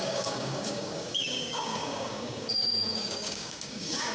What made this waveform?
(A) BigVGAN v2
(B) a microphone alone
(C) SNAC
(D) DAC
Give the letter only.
D